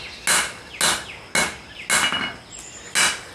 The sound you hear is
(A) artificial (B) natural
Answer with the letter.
B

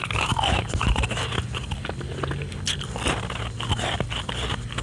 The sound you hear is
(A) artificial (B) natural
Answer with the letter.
B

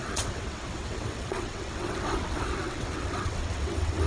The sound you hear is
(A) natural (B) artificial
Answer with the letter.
B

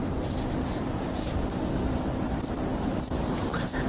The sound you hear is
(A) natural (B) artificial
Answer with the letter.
B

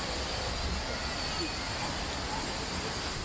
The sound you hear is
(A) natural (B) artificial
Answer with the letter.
A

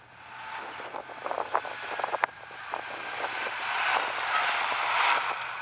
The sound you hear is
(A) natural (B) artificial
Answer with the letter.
B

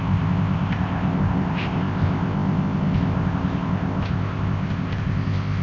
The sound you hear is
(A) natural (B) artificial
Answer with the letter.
B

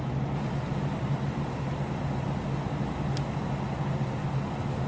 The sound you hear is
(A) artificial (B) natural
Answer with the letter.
B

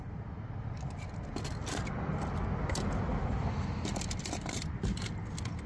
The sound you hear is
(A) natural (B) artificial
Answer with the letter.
A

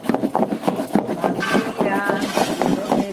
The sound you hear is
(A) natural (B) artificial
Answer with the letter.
A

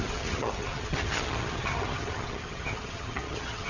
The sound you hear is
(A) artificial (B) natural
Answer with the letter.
A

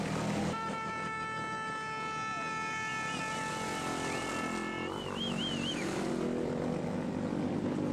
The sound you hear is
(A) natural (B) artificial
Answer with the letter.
A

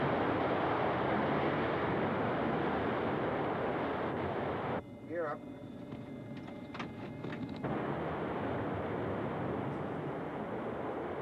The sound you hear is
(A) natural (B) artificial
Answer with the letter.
A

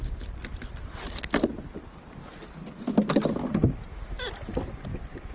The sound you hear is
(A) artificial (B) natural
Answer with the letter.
B